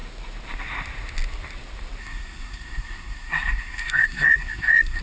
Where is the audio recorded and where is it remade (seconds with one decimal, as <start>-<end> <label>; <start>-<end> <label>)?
0.0-2.0 recorded; 2.0-5.0 remade